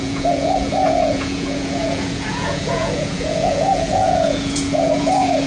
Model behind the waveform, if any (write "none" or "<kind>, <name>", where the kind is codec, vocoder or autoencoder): vocoder, Vocos